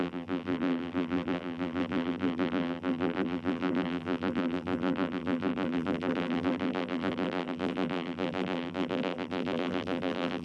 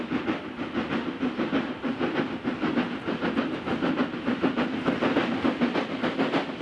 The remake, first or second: first